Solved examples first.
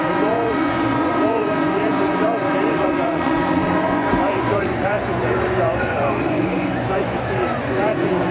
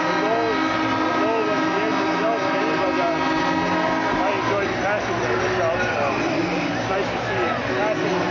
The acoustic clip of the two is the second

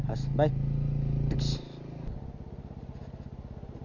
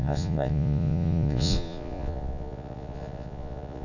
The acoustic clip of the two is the first